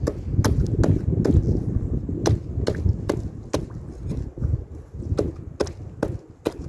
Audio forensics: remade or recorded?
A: recorded